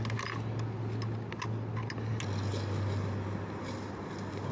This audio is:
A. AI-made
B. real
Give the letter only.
B